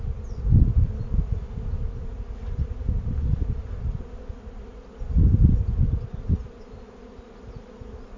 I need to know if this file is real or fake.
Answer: real